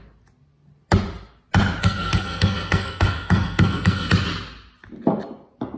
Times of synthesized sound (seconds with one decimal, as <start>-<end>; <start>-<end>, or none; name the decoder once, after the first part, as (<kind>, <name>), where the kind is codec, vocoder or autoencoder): 1.8-4.1 (codec, SNAC)